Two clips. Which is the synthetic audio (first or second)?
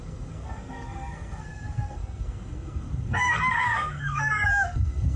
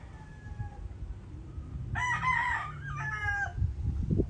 first